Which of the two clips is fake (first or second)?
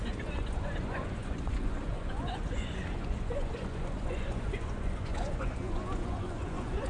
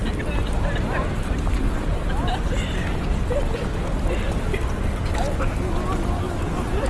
first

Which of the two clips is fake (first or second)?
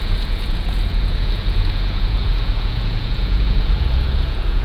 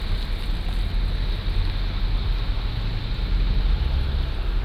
first